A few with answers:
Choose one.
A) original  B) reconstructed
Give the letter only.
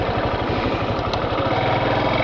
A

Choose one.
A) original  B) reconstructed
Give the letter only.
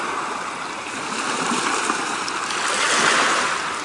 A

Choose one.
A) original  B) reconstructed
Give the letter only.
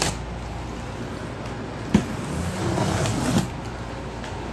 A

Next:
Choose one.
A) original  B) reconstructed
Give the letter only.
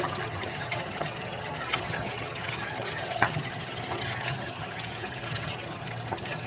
B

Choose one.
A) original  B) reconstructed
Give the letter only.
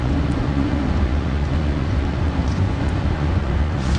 B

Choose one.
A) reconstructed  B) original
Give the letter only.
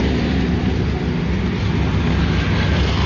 B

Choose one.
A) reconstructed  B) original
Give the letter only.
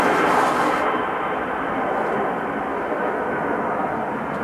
B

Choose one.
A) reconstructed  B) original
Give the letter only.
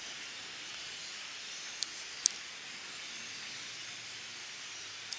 B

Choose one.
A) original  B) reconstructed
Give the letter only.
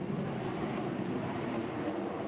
A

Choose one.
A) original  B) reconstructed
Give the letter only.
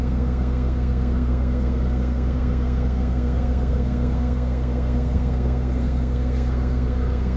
B